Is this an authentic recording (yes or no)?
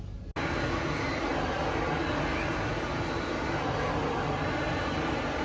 yes